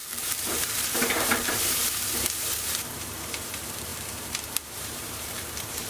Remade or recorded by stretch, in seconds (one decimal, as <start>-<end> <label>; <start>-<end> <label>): 0.0-5.9 remade